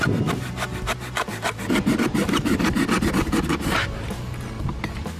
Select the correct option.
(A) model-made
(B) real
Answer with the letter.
B